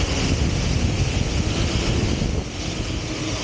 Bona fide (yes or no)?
yes